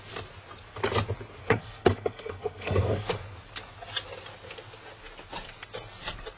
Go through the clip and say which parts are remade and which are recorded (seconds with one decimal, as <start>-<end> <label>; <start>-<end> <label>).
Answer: 0.0-1.4 recorded; 1.4-3.1 remade; 3.1-6.4 recorded